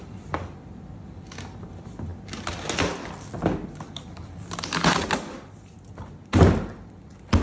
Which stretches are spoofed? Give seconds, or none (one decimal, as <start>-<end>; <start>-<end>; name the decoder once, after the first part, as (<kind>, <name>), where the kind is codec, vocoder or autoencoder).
none